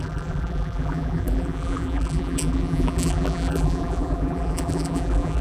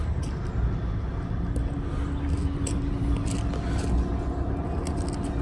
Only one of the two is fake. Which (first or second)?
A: first